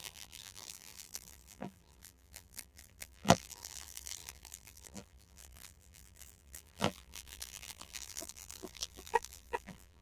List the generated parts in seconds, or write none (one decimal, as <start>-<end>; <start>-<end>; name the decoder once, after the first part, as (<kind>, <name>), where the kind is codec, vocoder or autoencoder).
0.0-10.0 (vocoder, BigVGAN v2)